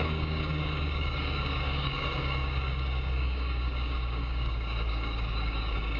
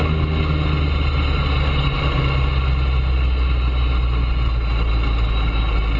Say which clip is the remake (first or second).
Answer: first